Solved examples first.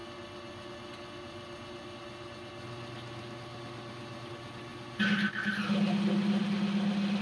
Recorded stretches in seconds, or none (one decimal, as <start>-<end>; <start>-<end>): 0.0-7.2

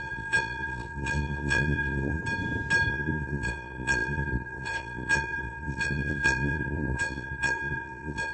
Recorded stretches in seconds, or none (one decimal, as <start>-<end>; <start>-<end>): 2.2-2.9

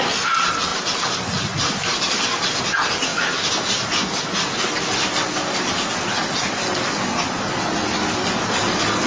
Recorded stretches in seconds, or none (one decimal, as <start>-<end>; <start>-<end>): 3.1-8.1

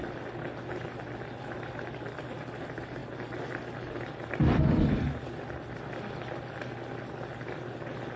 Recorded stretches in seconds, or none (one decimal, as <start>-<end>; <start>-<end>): 0.0-8.2